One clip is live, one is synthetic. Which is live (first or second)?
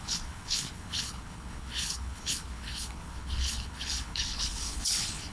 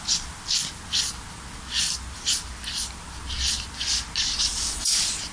second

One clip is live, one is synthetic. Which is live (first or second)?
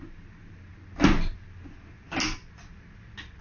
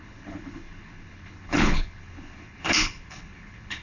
first